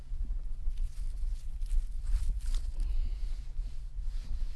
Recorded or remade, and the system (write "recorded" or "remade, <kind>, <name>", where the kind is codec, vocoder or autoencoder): recorded